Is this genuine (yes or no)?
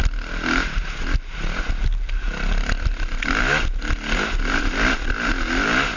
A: yes